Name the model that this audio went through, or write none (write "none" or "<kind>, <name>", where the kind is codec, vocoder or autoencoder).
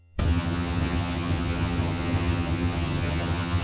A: vocoder, HiFi-GAN